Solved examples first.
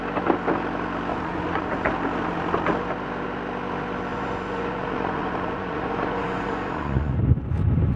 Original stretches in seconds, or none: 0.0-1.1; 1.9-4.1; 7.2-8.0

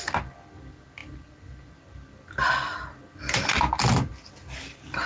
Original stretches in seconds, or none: 0.0-5.1

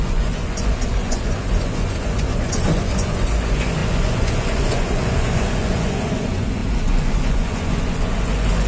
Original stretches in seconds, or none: none

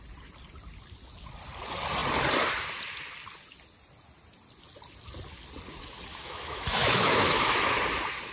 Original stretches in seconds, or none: 0.0-6.1; 7.8-8.3

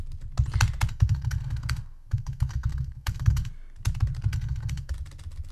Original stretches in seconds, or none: 0.0-0.9; 3.5-4.3; 4.9-5.5

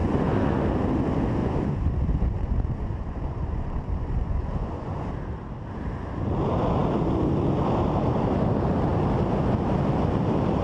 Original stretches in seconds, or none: 0.6-1.4; 5.1-10.6